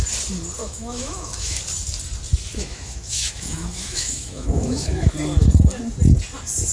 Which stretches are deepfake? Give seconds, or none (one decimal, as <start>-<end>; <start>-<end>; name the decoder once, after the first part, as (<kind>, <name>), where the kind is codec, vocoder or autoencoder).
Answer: 0.6-1.6 (autoencoder, DAC-VAE); 2.5-5.1